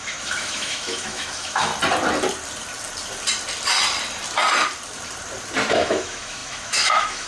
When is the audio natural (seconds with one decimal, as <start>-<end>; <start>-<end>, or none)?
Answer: 1.7-5.7